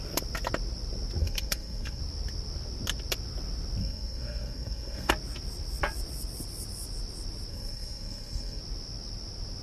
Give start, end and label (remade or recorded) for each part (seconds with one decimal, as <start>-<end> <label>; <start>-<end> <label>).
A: 0.0-1.2 recorded; 1.2-2.0 remade; 2.0-3.8 recorded; 3.8-5.1 remade; 5.1-7.5 recorded; 7.5-8.6 remade; 8.6-9.6 recorded